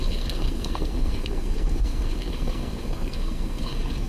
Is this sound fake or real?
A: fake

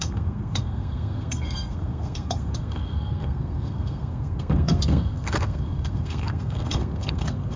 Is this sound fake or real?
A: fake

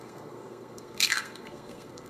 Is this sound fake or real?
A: fake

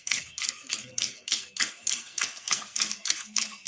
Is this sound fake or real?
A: fake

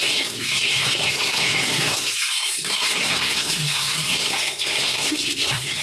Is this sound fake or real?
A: fake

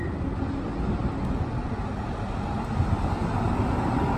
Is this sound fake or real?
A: real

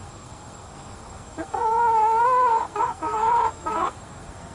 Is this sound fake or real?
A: fake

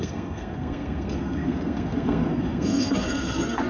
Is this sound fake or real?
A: fake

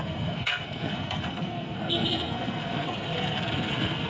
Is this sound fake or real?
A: fake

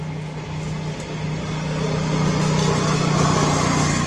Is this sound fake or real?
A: real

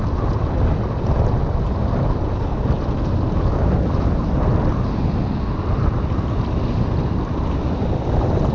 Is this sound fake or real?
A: real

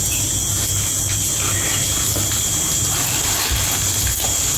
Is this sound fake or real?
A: real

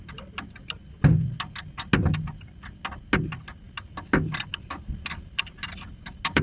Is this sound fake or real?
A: real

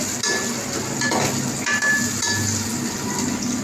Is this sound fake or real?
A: real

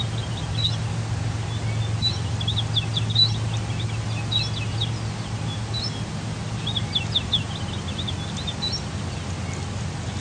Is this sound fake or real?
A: real